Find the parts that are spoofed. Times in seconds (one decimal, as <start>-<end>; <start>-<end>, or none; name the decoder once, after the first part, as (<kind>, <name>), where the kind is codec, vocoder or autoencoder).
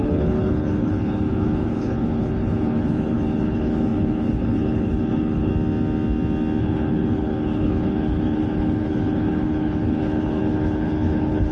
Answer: 0.0-5.5 (codec, HILCodec); 6.6-11.5